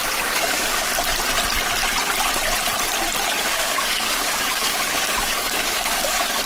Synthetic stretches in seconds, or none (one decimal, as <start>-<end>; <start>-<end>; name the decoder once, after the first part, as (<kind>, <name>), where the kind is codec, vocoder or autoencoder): 0.0-0.9 (codec, DAC); 3.4-6.5